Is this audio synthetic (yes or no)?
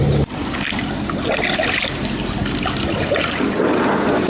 no